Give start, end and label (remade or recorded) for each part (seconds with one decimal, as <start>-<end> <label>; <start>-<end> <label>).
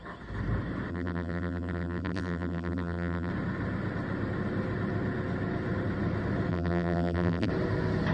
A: 0.0-0.9 recorded; 0.9-3.3 remade; 3.3-6.5 recorded; 6.5-7.5 remade; 7.5-8.1 recorded